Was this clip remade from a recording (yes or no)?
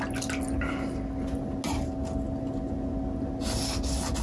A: no